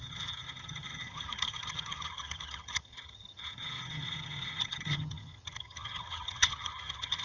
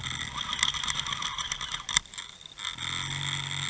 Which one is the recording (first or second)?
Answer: second